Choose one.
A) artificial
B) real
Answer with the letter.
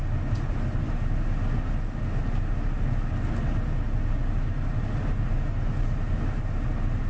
B